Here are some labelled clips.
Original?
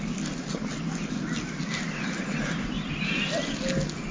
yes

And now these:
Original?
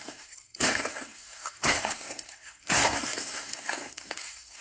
no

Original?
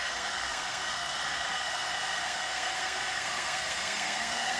no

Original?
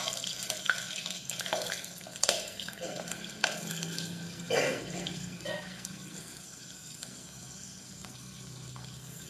no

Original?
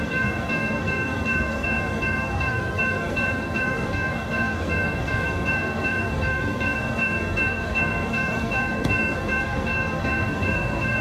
no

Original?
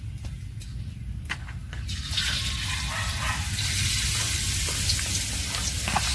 yes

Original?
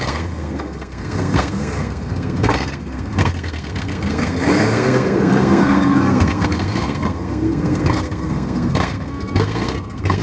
no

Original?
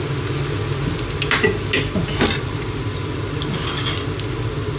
yes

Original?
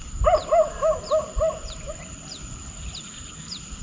yes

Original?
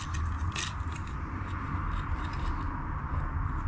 yes